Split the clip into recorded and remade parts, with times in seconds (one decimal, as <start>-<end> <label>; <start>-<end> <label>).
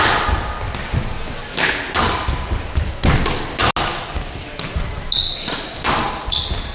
0.0-6.7 recorded